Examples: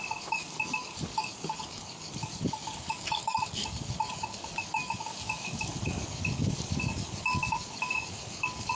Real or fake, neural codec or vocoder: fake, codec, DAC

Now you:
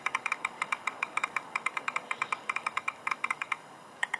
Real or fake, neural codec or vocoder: fake, codec, DAC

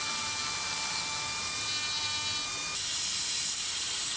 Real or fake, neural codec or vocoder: real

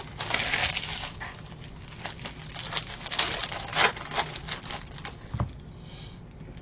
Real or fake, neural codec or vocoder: real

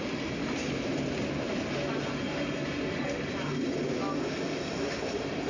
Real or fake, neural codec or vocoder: real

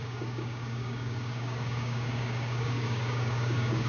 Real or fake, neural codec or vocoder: fake, codec, DAC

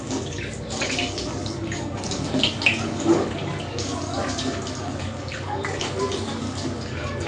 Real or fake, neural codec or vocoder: fake, codec, DAC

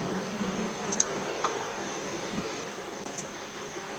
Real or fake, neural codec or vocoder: fake, codec, DAC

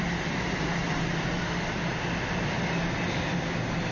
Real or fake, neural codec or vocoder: real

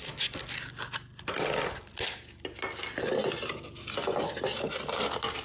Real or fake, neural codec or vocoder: real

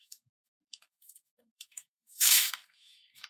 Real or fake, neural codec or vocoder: fake, codec, DAC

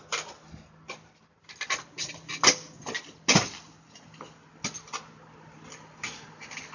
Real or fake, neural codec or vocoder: real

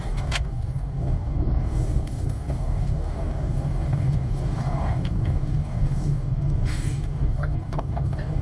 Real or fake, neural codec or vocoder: fake, codec, DAC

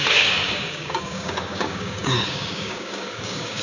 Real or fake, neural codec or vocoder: fake, codec, DAC